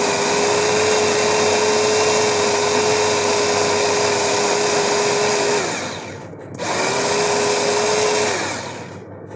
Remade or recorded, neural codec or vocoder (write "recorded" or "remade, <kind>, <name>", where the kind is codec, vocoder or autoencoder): recorded